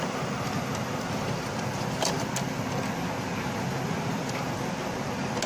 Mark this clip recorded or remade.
recorded